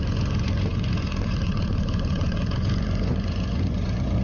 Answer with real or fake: fake